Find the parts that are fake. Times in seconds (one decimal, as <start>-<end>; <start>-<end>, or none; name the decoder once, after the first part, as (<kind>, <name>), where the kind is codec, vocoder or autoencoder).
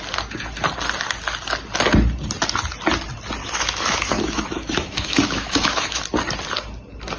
3.4-6.0 (autoencoder, DAC-VAE)